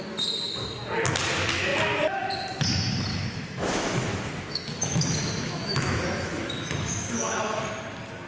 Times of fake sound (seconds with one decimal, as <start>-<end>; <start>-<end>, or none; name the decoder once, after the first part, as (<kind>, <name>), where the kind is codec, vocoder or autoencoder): 3.1-7.6 (autoencoder, DAC-VAE)